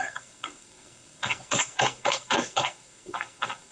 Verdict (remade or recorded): remade